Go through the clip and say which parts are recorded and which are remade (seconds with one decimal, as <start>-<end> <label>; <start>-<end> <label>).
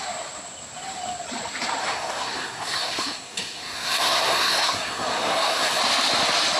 0.0-1.8 recorded; 1.8-5.8 remade; 5.8-6.6 recorded